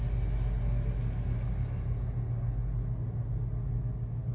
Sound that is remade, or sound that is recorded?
recorded